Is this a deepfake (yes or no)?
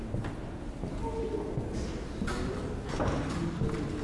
no